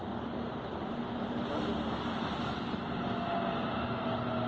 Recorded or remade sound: recorded